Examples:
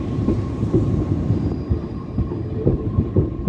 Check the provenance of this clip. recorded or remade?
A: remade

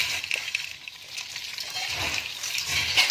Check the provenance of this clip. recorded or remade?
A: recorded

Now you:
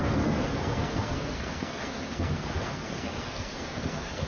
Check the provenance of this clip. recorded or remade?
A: remade